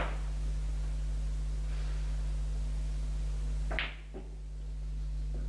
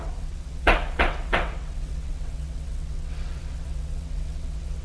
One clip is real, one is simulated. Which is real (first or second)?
first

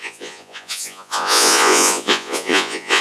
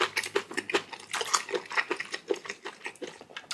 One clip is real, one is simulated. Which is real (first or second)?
second